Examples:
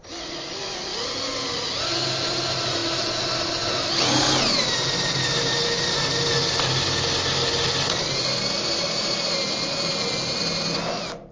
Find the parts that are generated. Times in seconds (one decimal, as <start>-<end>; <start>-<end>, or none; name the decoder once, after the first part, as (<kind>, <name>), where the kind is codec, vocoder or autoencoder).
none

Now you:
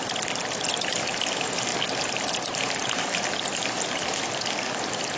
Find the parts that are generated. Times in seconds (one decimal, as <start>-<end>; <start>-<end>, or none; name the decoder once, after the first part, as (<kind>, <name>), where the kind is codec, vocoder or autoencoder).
1.7-4.2 (vocoder, BigVGAN v2)

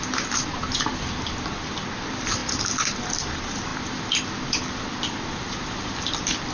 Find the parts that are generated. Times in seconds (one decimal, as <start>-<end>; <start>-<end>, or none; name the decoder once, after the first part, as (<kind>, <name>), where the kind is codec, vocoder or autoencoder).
0.0-6.5 (vocoder, BigVGAN v2)

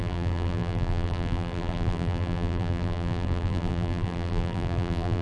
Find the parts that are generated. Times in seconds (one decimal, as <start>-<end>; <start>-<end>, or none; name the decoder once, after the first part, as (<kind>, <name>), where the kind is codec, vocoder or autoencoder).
0.0-5.2 (vocoder, BigVGAN v2)